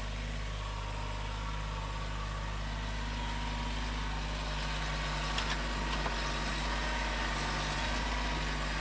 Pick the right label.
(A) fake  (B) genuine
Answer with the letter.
B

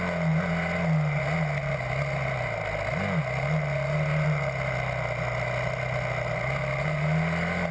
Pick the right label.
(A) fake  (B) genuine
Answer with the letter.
B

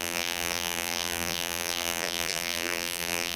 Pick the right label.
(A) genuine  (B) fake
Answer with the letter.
B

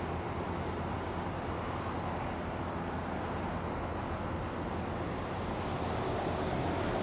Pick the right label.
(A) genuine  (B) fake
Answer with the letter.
A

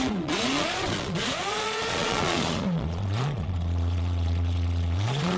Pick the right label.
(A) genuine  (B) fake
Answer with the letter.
B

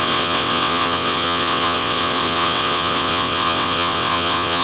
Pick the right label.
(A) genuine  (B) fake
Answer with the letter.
B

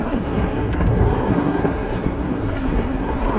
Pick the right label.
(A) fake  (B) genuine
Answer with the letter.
A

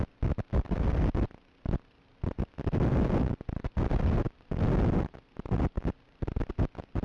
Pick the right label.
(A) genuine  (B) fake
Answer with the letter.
A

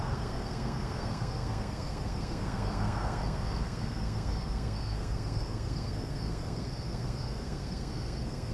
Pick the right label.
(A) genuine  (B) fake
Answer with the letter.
B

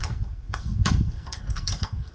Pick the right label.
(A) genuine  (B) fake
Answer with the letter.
B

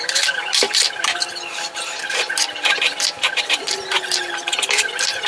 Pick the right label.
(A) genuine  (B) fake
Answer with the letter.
B